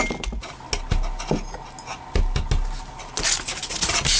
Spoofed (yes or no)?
no